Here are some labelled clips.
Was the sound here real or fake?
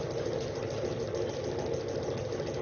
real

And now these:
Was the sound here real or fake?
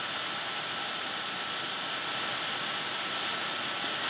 real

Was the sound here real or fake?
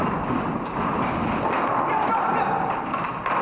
real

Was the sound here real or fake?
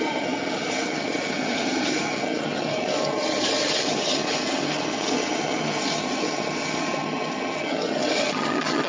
fake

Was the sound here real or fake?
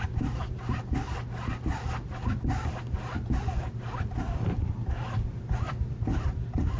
real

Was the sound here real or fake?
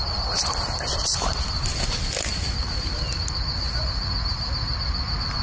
real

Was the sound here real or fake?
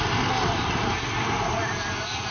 real